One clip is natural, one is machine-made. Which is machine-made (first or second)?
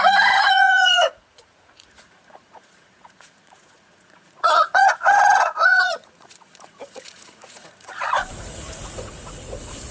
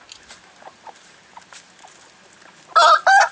first